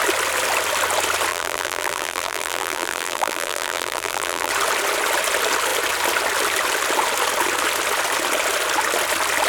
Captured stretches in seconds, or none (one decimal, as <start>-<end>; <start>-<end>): 0.0-1.3; 4.5-9.5